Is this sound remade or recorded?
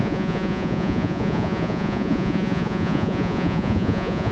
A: remade